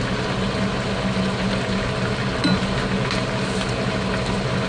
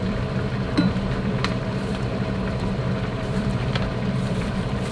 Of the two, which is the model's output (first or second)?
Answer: second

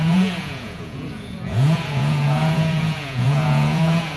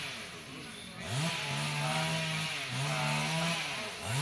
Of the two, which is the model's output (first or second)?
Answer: first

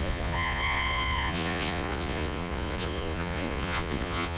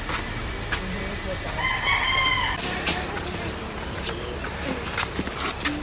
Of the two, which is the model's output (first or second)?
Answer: first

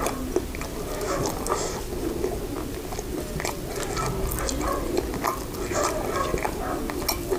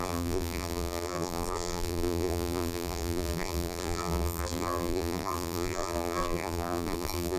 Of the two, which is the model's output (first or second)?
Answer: second